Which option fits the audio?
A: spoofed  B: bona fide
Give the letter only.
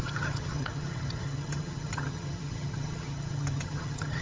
A